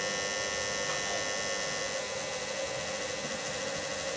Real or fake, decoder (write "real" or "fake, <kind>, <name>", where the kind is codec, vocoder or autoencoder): real